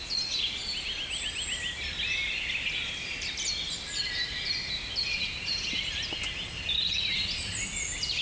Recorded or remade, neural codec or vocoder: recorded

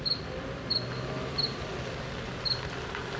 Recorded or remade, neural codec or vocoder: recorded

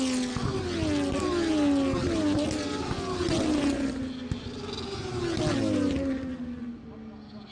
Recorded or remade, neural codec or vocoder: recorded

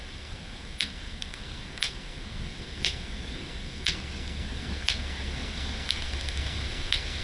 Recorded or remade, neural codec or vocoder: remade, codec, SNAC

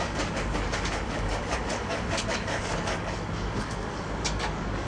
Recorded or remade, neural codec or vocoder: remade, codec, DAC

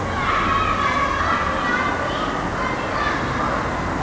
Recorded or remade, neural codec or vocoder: recorded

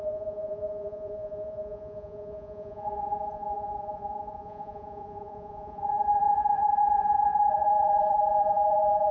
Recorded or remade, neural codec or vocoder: remade, vocoder, Vocos